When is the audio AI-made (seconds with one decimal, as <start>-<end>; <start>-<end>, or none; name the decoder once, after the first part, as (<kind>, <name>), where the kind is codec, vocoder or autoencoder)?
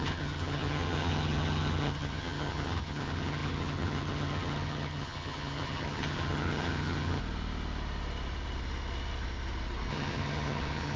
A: 0.0-7.2 (vocoder, HiFi-GAN); 9.9-11.0